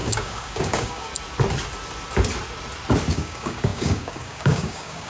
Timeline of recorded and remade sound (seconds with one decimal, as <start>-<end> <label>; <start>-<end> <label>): 0.0-1.1 remade; 1.1-3.1 recorded; 3.1-5.1 remade